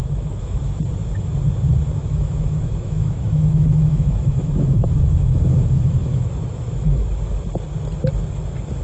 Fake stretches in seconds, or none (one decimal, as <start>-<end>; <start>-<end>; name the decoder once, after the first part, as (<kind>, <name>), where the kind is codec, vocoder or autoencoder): 0.0-0.8 (autoencoder, DAC-VAE); 2.0-7.0